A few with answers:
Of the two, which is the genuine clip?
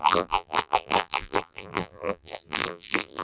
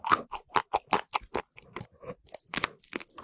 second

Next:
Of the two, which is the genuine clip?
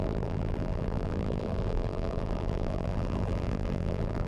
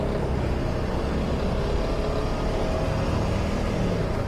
second